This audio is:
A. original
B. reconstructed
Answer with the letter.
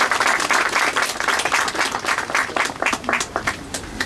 A